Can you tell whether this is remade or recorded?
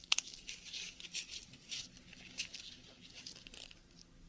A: recorded